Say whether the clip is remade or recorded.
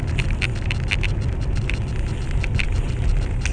recorded